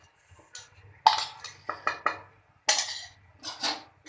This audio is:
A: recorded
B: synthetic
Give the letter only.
A